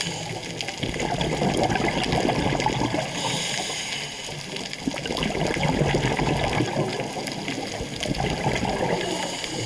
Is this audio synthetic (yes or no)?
no